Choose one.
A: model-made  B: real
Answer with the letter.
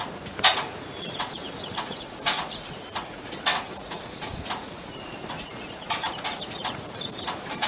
A